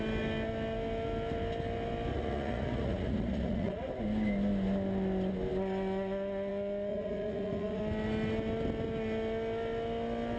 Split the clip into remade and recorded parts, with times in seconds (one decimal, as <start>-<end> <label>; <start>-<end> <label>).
0.0-2.1 recorded; 2.1-3.9 remade; 3.9-6.9 recorded; 6.9-7.8 remade; 7.8-10.4 recorded